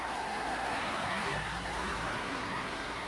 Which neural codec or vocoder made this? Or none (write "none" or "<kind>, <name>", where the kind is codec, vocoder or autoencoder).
codec, SNAC